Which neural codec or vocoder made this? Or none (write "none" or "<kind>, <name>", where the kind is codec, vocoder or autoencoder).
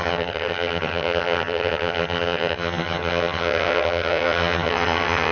vocoder, HiFi-GAN